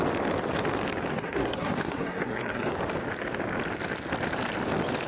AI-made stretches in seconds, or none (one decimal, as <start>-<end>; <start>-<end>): 1.1-2.8